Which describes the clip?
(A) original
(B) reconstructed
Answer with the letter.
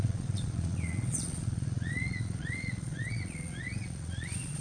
B